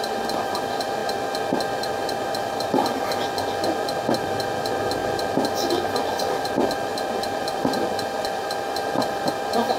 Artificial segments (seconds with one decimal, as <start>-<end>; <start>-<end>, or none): 0.0-1.0; 1.8-3.2; 3.8-9.8